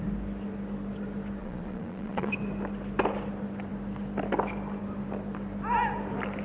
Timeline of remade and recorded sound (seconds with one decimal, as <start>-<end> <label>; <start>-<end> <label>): 0.0-1.4 recorded; 1.4-2.3 remade; 2.3-6.4 recorded